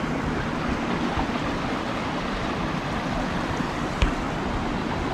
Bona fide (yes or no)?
yes